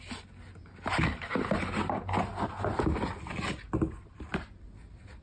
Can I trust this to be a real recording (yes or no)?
yes